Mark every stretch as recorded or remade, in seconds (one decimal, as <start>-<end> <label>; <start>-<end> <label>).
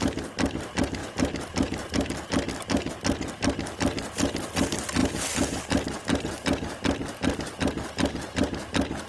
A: 0.0-5.0 recorded; 5.0-5.6 remade; 5.6-9.1 recorded